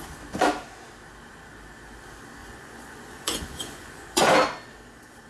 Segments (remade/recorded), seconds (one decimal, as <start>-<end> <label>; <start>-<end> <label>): 0.0-2.4 recorded; 2.4-4.3 remade; 4.3-5.3 recorded